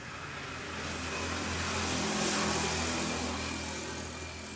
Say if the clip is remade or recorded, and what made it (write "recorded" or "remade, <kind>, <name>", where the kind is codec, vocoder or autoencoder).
recorded